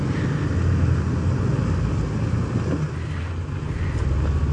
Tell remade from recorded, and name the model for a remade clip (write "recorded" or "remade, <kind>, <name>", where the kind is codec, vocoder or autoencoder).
recorded